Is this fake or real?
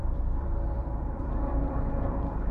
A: fake